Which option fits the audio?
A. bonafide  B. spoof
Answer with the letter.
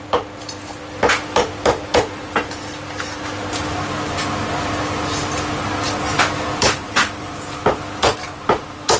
A